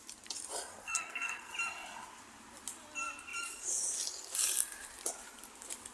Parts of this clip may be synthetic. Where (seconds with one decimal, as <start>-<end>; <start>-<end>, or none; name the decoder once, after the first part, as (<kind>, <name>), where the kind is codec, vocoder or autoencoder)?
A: 0.8-1.5 (codec, SNAC)